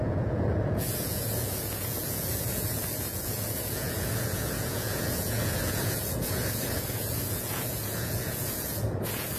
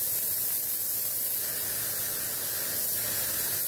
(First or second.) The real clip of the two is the second